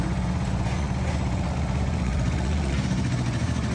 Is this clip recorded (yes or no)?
no